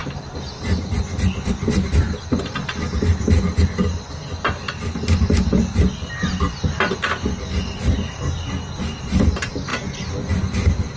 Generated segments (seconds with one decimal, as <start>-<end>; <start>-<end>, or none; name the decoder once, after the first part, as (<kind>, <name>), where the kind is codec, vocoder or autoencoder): none